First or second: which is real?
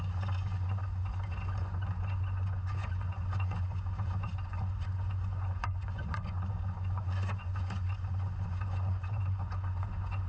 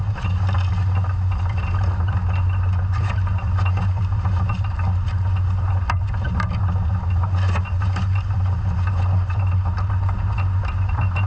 second